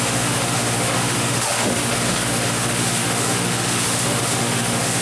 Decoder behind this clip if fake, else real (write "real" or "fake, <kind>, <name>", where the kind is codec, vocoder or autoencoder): fake, autoencoder, DAC-VAE